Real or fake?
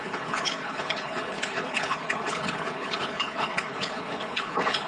fake